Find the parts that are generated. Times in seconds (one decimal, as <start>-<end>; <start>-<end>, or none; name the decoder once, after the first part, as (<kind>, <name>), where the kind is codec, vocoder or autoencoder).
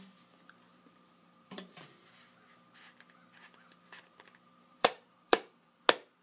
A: 0.7-2.3 (vocoder, BigVGAN v2); 4.7-5.8